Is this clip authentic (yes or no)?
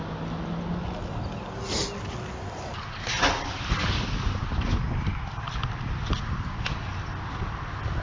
yes